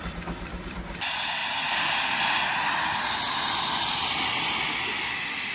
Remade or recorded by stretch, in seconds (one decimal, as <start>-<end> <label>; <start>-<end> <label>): 0.0-5.5 recorded